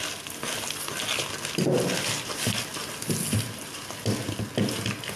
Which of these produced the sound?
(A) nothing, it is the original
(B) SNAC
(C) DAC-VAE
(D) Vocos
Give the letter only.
A